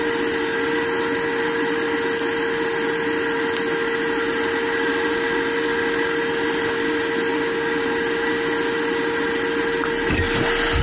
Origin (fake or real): real